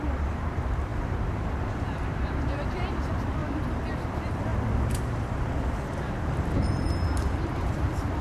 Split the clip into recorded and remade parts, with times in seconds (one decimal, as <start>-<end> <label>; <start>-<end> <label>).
0.0-3.4 remade; 3.4-3.9 recorded; 3.9-8.2 remade